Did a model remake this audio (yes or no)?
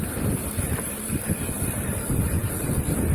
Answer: no